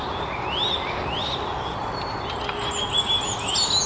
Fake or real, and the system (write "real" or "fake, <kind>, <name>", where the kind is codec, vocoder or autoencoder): real